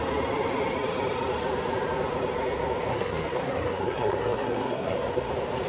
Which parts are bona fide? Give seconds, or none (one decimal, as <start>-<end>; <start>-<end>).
0.0-2.9; 5.3-5.7